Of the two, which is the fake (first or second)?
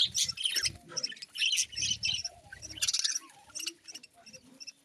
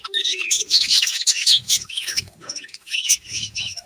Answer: second